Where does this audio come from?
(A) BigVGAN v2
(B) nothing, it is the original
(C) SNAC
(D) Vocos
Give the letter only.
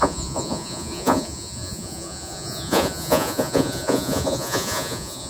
D